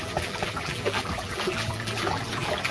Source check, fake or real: fake